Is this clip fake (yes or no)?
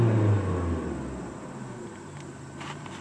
no